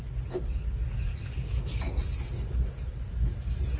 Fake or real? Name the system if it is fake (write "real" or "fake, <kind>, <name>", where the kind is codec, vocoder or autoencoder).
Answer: real